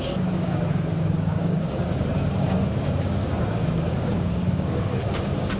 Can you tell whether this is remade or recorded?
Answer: remade